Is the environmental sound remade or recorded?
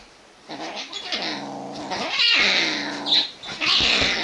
recorded